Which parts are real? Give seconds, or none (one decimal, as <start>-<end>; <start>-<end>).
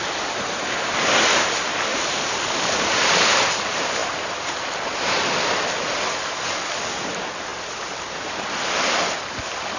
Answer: 0.0-1.9; 3.5-4.0; 4.8-9.8